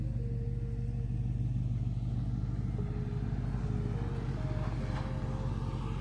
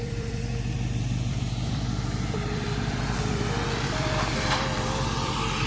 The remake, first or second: second